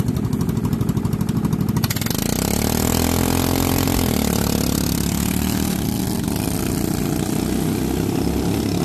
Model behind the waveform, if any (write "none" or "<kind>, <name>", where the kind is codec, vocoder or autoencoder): none